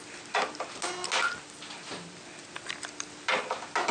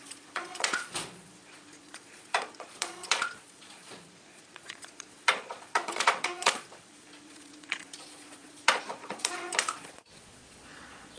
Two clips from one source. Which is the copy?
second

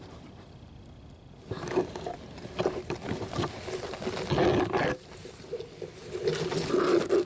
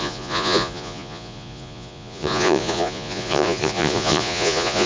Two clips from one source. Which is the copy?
second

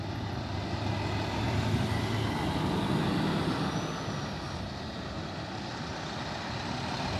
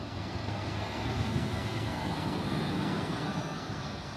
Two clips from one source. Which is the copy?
second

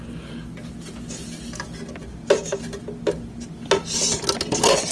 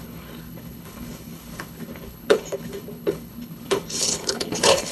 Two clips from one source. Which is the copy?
second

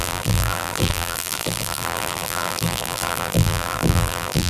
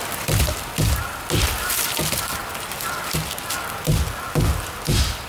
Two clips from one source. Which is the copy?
first